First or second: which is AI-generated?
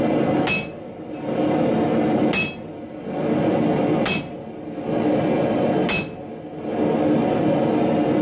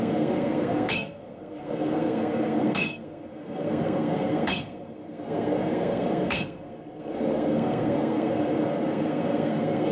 second